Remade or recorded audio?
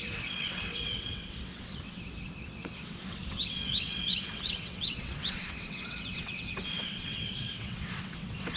remade